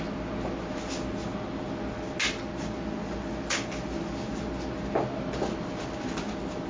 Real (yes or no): yes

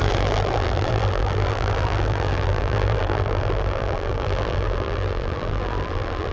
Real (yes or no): no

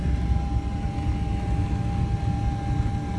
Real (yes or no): yes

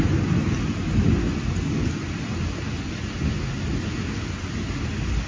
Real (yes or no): yes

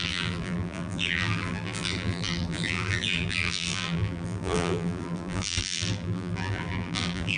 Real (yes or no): no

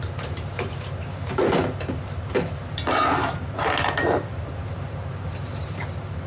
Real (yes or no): no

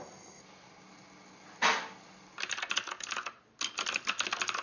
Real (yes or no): yes